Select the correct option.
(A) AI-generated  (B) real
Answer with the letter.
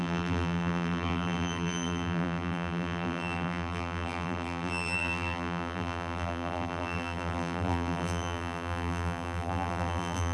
A